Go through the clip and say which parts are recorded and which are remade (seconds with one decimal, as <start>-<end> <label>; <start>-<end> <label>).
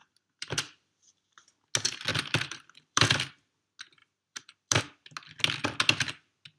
0.0-1.4 remade; 1.4-2.1 recorded; 2.1-3.3 remade; 3.3-4.0 recorded; 4.0-4.8 remade; 4.8-6.6 recorded